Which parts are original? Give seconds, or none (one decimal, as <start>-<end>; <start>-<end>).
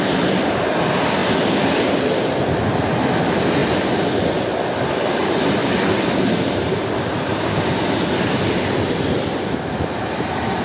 0.0-1.2; 1.9-5.6; 6.3-10.6